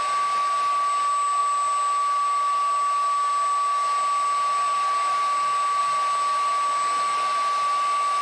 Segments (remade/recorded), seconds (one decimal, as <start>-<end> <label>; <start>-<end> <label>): 0.0-8.2 recorded

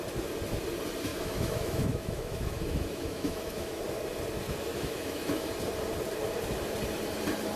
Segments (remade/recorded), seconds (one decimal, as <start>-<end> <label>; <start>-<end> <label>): 0.0-1.1 recorded; 1.1-3.8 remade; 3.8-4.7 recorded; 4.7-5.5 remade; 5.5-7.6 recorded

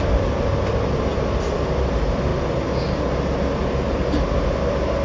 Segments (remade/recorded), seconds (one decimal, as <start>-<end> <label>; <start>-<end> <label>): 0.0-5.0 recorded

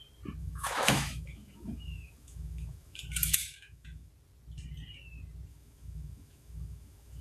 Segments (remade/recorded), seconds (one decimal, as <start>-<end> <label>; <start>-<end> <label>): 0.0-0.4 recorded; 0.4-4.1 remade; 4.1-5.5 recorded; 5.5-7.2 remade

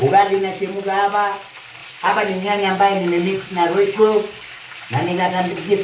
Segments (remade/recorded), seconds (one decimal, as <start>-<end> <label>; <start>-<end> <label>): 0.0-1.8 recorded; 1.8-5.3 remade; 5.3-5.8 recorded